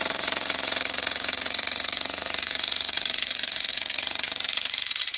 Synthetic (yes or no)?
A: yes